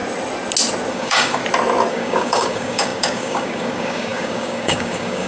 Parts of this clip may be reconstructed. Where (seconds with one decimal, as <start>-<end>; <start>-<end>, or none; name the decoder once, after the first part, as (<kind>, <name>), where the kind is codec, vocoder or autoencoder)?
0.9-1.4 (codec, DAC); 1.9-5.3